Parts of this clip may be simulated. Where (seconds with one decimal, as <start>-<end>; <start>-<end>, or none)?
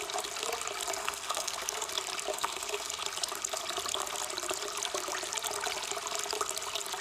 1.0-1.9; 2.3-2.9